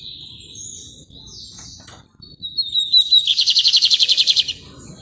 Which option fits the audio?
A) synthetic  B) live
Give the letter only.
B